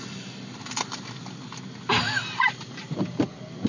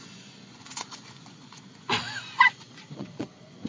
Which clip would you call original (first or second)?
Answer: first